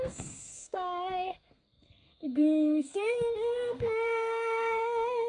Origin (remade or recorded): remade